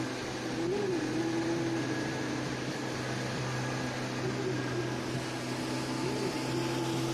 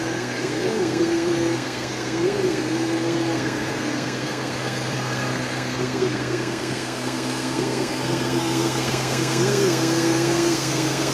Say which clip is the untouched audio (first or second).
first